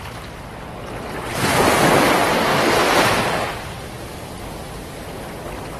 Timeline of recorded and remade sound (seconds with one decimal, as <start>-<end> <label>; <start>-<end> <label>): 0.0-2.5 remade; 2.5-3.3 recorded; 3.3-5.8 remade